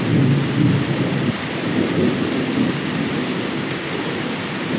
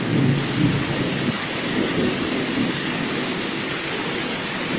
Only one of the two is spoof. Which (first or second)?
second